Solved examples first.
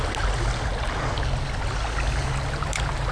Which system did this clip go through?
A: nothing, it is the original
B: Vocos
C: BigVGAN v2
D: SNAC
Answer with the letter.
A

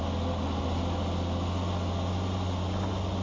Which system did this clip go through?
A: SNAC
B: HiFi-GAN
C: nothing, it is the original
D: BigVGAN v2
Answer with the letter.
C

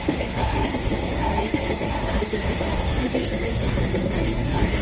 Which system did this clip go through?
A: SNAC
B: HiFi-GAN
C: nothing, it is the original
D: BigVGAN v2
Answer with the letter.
A